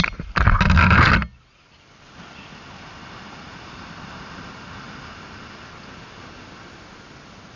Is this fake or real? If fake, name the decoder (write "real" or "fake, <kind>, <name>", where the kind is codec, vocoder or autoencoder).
real